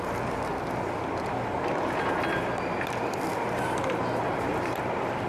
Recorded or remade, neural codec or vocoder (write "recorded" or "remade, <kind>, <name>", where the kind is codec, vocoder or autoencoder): remade, vocoder, BigVGAN v2